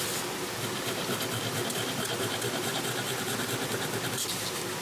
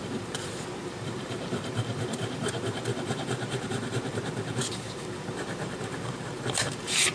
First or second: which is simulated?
second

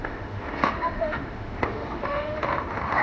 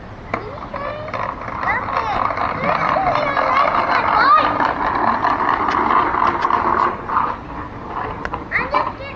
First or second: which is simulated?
first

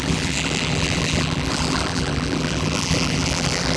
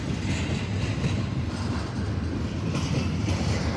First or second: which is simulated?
first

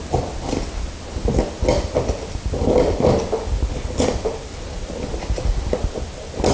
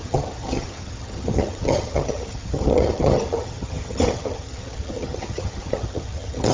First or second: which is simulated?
second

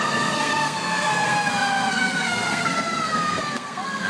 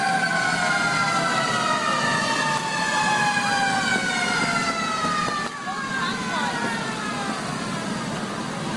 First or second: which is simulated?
first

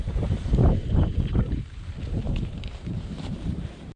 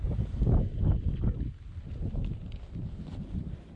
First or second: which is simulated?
first